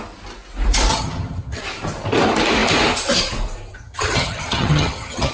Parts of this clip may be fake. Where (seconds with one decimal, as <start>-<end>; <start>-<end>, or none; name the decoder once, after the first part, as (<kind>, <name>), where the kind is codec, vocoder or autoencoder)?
0.9-1.6 (vocoder, HiFi-GAN); 3.8-5.3

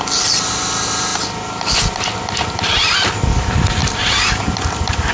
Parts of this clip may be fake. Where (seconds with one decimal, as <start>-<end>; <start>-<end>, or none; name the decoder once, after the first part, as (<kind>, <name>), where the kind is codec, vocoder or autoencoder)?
none

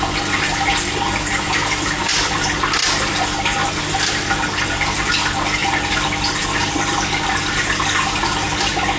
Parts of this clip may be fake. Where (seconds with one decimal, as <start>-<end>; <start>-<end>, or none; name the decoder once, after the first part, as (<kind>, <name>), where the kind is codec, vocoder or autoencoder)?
none